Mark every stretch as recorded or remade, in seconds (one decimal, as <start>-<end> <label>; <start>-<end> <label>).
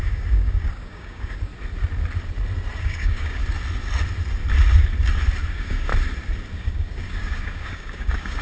0.0-1.5 remade; 1.5-2.8 recorded; 2.8-3.4 remade; 3.4-5.5 recorded; 5.5-5.9 remade; 5.9-6.6 recorded; 6.6-8.4 remade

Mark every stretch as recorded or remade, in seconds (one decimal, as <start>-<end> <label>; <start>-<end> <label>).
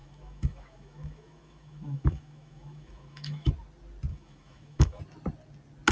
0.0-3.5 remade; 3.5-4.1 recorded; 4.1-5.0 remade; 5.0-5.9 recorded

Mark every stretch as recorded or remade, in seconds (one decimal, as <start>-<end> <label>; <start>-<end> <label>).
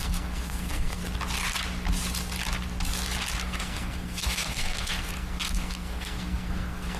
0.0-1.0 remade; 1.0-3.4 recorded; 3.4-7.0 remade